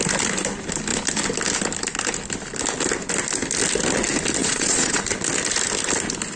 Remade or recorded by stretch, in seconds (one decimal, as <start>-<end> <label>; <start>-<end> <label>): 0.0-4.4 recorded; 4.4-5.0 remade; 5.0-6.4 recorded